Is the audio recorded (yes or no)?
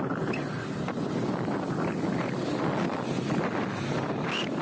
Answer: yes